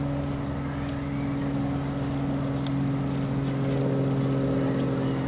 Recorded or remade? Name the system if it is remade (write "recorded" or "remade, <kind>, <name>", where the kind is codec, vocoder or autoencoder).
recorded